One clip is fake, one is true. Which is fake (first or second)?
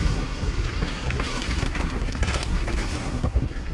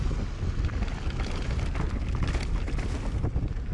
first